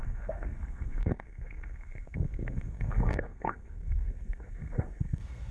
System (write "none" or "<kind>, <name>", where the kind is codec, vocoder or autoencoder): codec, SNAC